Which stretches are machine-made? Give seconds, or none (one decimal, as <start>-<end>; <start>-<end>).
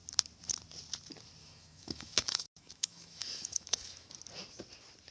1.4-4.1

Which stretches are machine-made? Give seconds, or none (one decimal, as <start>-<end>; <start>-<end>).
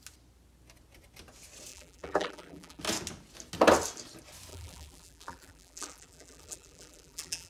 1.7-2.8; 4.5-7.5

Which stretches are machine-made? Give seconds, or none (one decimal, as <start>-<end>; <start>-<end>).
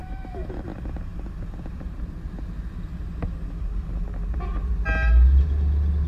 0.0-0.5